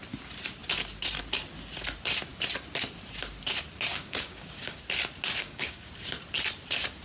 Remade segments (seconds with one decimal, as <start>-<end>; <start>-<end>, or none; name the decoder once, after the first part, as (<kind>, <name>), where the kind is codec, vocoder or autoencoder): 3.9-4.8 (codec, DAC); 5.4-5.9